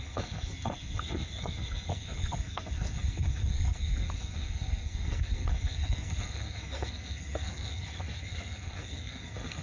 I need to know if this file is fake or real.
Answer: fake